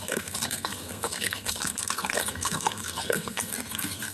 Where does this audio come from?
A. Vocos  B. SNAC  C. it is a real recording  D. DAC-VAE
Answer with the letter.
B